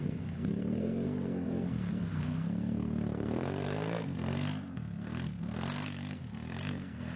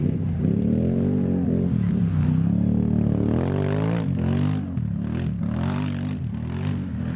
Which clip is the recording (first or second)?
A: second